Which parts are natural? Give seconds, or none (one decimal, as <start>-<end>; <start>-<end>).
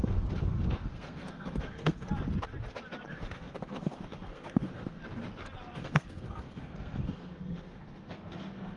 2.1-3.1; 5.0-5.8